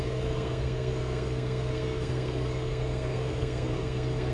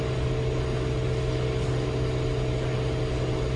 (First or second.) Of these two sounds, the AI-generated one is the first